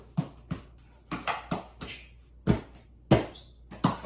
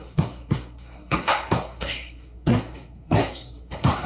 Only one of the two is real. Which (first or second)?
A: first